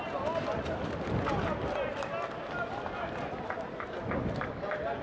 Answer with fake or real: real